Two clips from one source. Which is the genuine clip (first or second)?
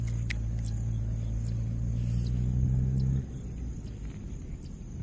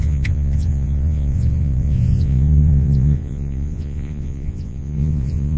first